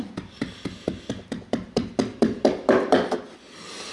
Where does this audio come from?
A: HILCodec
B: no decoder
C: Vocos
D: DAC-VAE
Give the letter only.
B